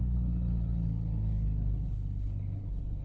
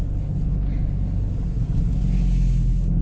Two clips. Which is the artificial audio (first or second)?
first